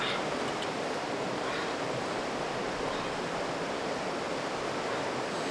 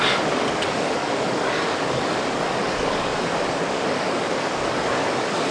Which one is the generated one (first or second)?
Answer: second